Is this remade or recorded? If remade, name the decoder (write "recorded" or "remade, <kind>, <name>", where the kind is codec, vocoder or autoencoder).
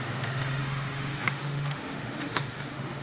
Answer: remade, autoencoder, DAC-VAE